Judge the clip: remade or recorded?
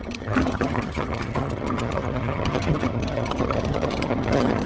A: remade